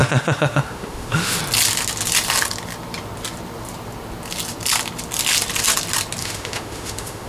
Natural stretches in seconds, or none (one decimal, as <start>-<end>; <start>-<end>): 1.4-6.2